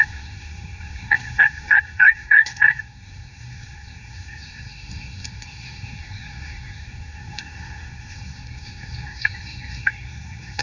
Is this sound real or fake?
fake